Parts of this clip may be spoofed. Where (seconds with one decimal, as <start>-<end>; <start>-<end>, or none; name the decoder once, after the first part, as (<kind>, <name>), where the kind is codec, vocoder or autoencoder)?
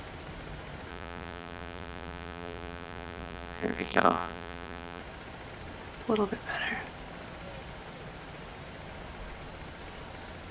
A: 0.9-5.0 (vocoder, BigVGAN v2)